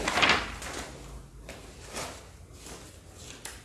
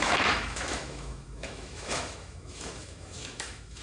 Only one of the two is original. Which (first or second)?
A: first